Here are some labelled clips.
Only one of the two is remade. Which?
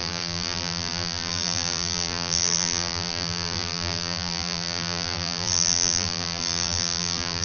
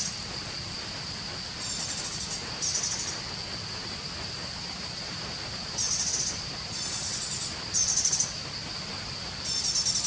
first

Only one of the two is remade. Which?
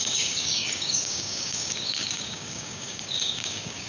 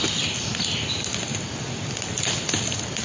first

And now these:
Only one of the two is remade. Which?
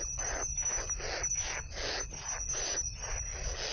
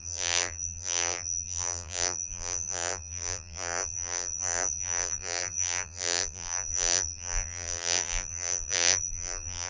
second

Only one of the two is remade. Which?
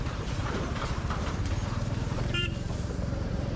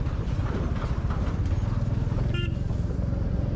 first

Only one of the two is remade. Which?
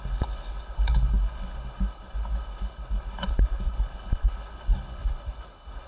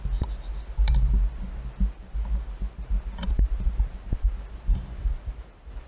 first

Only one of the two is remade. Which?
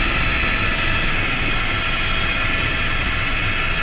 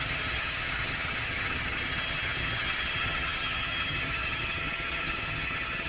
second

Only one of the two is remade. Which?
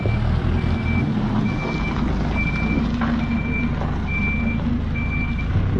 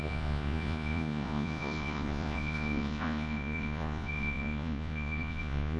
second